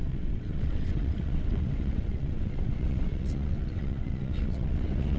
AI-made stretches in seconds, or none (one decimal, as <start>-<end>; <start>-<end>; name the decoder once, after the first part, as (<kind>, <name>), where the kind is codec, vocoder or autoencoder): 0.0-5.2 (vocoder, WaveNeXt)